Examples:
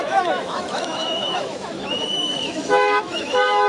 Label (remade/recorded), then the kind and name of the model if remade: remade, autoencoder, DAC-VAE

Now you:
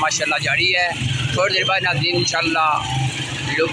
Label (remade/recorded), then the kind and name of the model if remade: recorded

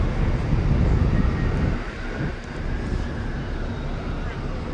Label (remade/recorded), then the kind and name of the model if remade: recorded